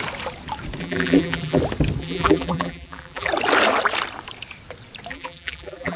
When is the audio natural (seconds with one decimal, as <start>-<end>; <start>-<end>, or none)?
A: 0.0-0.8; 1.6-2.0; 3.3-5.1